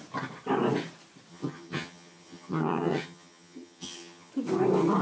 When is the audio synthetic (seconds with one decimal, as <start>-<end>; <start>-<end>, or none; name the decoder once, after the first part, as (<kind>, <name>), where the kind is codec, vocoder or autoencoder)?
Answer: 1.3-4.3 (vocoder, HiFi-GAN)